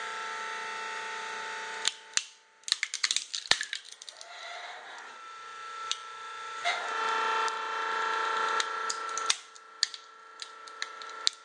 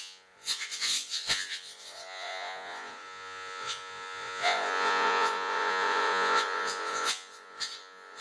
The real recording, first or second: first